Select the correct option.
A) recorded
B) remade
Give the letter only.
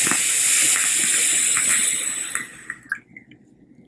A